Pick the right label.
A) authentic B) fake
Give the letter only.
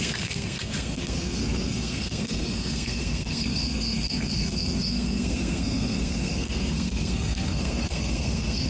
B